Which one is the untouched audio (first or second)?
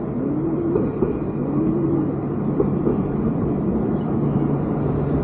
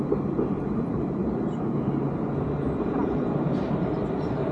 first